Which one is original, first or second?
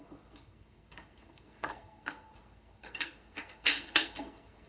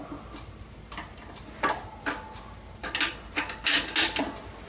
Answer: second